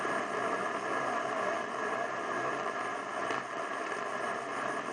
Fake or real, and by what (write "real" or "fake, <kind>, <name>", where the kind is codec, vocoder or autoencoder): real